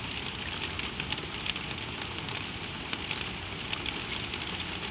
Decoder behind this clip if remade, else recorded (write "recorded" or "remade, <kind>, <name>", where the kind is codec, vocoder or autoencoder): recorded